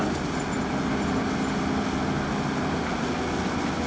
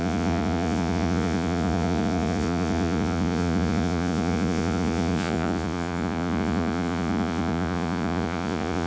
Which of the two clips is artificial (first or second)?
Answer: second